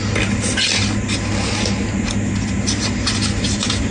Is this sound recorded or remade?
recorded